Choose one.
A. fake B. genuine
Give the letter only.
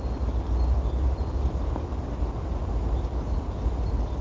B